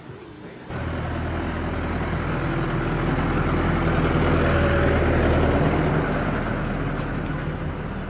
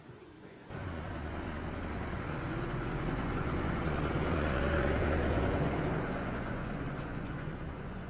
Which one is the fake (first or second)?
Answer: second